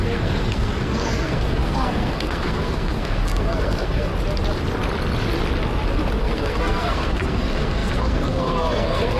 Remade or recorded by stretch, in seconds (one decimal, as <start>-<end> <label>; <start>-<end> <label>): 0.0-4.1 remade; 4.1-6.2 recorded; 6.2-9.2 remade